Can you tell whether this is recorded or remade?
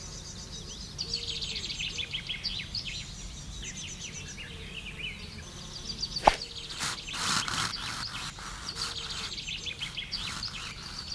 recorded